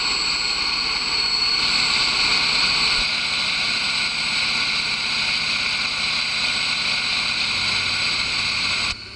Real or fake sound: real